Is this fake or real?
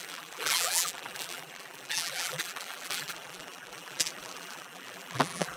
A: fake